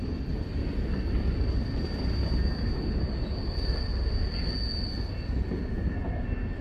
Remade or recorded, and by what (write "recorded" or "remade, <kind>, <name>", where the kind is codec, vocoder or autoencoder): recorded